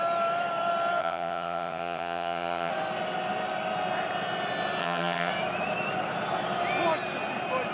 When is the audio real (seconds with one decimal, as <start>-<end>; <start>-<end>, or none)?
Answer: 0.0-1.0; 2.7-4.8; 5.3-7.7